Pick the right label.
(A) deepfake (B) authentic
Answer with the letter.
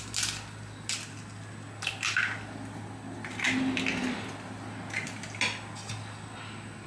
B